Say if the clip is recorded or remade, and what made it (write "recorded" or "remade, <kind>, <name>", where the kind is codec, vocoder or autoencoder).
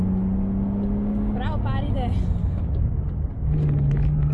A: recorded